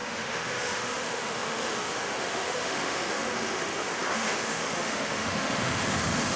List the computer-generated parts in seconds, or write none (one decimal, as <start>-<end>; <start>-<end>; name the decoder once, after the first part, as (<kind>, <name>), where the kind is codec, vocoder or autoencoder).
0.0-6.4 (autoencoder, DAC-VAE)